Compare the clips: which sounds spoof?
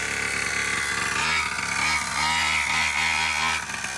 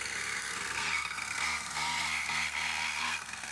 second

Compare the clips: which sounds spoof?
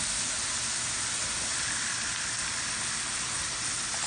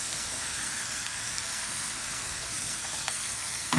second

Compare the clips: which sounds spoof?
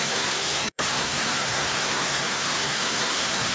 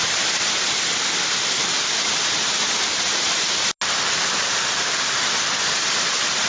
first